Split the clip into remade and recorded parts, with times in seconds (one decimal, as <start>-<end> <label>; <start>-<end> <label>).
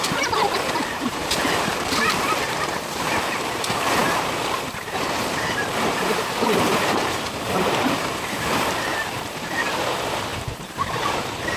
0.0-11.6 remade